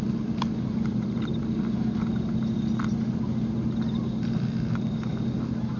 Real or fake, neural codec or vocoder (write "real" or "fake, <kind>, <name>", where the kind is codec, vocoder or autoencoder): real